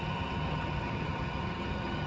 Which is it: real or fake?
fake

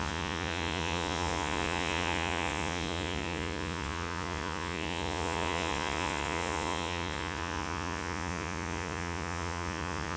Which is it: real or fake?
fake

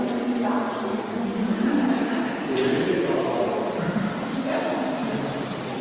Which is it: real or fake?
real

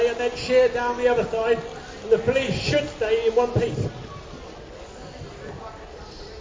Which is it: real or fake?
real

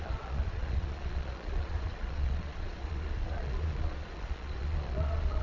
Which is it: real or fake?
fake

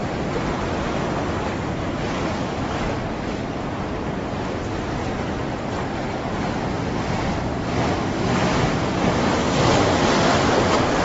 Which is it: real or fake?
fake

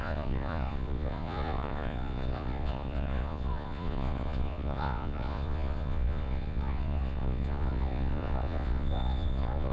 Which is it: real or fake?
fake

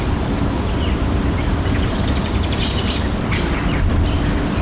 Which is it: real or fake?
real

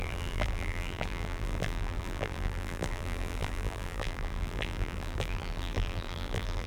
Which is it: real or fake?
fake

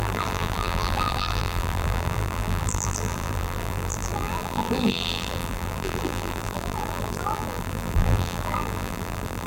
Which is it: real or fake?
fake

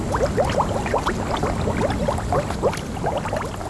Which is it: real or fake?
real